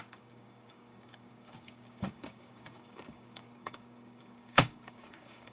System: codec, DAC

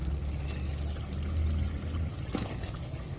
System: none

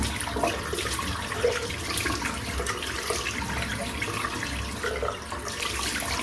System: none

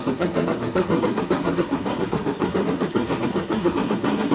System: codec, SNAC